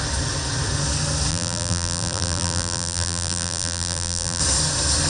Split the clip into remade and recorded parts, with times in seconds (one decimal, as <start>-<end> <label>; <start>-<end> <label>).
0.0-1.3 recorded; 1.3-4.4 remade; 4.4-5.1 recorded